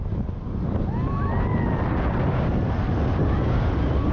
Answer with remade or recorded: recorded